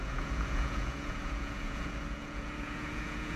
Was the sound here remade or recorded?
remade